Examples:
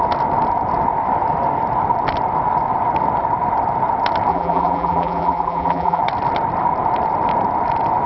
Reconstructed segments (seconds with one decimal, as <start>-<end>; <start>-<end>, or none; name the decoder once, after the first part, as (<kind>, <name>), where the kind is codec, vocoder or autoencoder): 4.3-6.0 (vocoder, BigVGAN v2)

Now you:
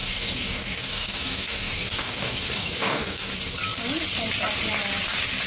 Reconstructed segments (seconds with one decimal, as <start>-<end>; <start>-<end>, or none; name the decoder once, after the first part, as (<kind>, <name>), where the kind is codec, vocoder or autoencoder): 0.0-3.3 (codec, DAC)

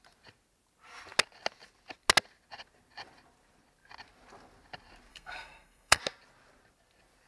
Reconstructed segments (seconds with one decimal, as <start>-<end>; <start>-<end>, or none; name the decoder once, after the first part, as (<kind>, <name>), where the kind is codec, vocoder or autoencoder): 5.1-6.0 (codec, SNAC)

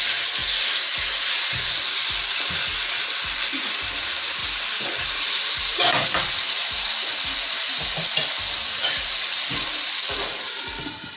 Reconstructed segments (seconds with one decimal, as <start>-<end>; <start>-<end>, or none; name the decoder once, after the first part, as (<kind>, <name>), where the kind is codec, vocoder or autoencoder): 0.4-1.7 (vocoder, BigVGAN v2); 4.4-6.9; 8.8-9.4

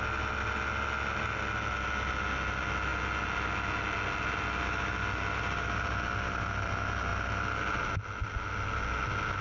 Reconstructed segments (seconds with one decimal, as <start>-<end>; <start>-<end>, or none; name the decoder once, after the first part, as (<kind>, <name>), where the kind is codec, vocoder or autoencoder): none

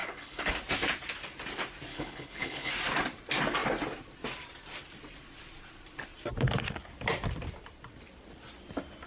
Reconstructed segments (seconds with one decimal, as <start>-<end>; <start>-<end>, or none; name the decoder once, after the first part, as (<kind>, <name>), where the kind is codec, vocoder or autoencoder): 0.0-0.5 (codec, HILCodec); 1.9-2.7